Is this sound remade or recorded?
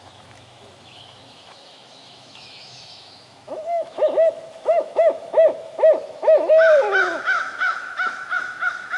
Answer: remade